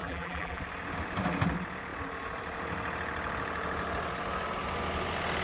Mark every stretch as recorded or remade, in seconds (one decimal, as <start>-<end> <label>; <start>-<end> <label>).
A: 0.0-0.6 remade; 0.6-5.4 recorded